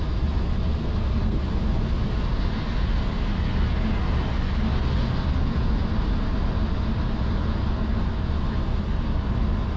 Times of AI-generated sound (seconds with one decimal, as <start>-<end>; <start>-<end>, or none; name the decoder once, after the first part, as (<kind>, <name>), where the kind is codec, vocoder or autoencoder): 0.8-1.4 (codec, SNAC)